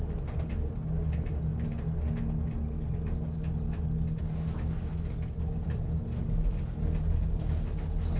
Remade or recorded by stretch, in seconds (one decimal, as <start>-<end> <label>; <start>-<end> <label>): 0.0-8.2 recorded